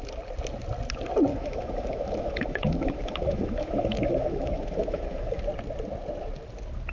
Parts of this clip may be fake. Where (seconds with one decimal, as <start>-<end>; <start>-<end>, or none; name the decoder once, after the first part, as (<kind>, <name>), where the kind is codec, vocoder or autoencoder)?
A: 1.3-5.4 (autoencoder, DAC-VAE)